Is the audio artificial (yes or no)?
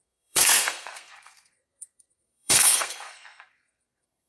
yes